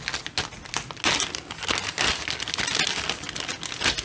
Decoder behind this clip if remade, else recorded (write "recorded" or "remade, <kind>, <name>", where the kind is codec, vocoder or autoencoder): recorded